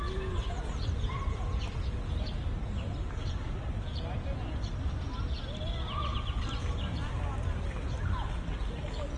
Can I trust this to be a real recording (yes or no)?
yes